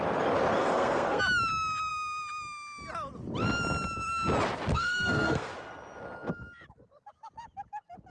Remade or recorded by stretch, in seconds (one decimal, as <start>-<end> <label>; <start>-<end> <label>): 0.0-0.6 recorded; 0.6-1.2 remade; 1.2-4.7 recorded; 4.7-5.5 remade; 5.5-8.1 recorded